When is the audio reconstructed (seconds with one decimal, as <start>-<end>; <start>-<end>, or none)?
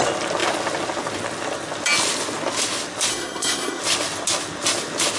3.1-3.8